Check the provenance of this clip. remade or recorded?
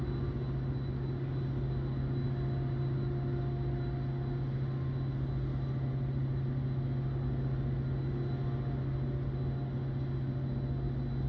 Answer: recorded